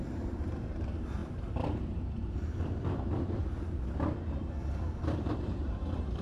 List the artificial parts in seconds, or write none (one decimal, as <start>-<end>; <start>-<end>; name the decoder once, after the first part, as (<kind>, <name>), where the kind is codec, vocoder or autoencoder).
0.0-3.4 (vocoder, BigVGAN v2); 5.3-6.2